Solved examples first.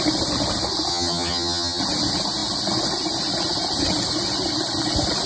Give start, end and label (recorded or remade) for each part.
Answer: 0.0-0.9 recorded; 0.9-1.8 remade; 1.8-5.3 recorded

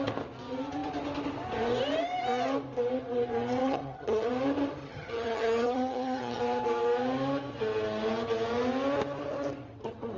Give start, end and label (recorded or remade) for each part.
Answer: 0.0-3.6 recorded; 3.6-4.3 remade; 4.3-4.8 recorded; 4.8-6.4 remade; 6.4-10.2 recorded